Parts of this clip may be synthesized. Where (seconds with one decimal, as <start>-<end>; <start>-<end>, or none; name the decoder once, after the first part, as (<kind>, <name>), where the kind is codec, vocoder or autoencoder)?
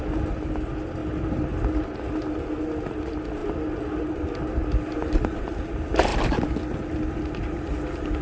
none